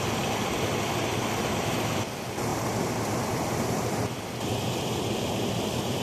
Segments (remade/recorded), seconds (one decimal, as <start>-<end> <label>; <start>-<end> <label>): 0.0-1.1 recorded; 1.1-1.9 remade; 1.9-6.0 recorded